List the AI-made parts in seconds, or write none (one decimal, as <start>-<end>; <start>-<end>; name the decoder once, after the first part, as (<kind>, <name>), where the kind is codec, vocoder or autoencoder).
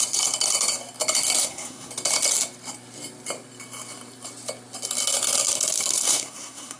1.4-1.9 (codec, SNAC); 6.0-6.8